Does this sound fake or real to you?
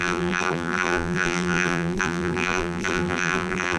fake